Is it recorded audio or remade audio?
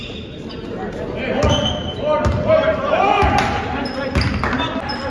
recorded